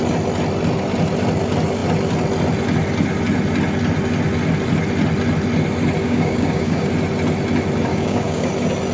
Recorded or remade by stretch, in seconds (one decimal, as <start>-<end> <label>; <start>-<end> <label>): 0.0-6.0 recorded; 6.0-6.9 remade; 6.9-7.9 recorded; 7.9-8.5 remade; 8.5-8.9 recorded